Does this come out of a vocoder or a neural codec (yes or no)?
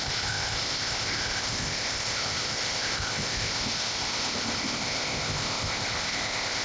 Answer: yes